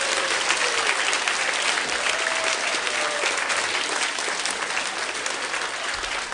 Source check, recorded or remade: recorded